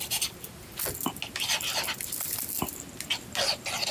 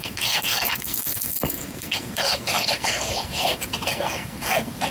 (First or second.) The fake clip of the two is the second